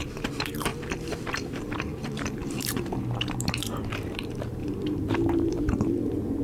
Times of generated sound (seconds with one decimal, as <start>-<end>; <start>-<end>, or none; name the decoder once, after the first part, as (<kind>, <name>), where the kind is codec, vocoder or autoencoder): 0.0-6.4 (vocoder, BigVGAN v2)